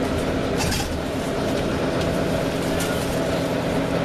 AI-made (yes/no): no